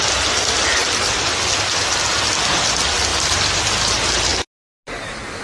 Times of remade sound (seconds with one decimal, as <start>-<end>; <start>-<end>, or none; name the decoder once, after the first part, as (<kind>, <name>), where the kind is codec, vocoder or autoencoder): none